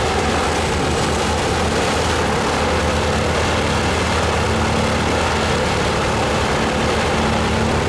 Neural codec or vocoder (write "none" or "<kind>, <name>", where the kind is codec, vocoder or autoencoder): none